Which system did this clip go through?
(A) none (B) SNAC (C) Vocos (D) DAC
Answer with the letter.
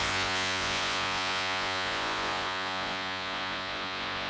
C